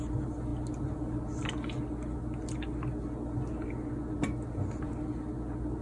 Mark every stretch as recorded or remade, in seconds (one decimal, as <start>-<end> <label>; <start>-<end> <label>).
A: 0.0-5.8 recorded